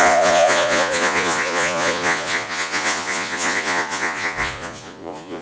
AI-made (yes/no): yes